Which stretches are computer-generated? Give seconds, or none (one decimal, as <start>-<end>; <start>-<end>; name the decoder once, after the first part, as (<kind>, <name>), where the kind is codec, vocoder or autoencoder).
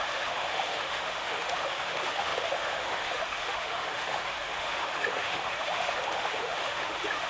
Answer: 0.0-7.3 (autoencoder, DAC-VAE)